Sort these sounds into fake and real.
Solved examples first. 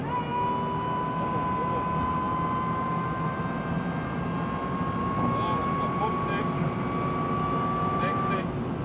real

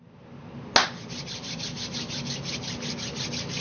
real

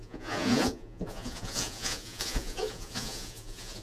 fake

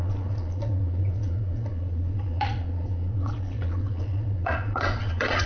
fake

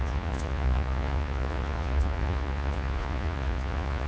fake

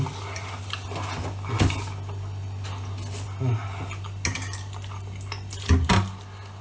real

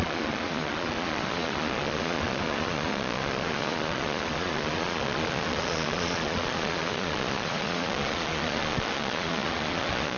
fake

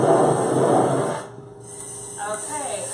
real